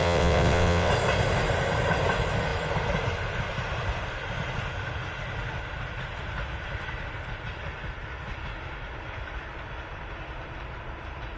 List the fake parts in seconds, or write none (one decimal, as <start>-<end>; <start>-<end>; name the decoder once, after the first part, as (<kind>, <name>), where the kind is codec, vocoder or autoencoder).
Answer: 0.0-0.9 (vocoder, WaveNeXt)